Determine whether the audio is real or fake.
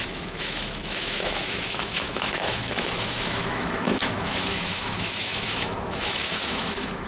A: fake